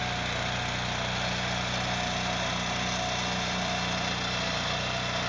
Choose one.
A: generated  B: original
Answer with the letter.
B